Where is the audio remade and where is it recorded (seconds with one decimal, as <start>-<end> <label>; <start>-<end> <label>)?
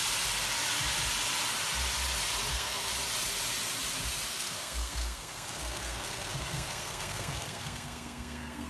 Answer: 0.0-2.5 recorded; 2.5-2.9 remade; 2.9-4.3 recorded; 4.3-8.7 remade